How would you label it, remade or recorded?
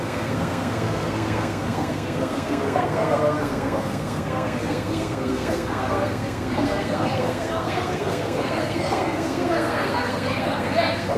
remade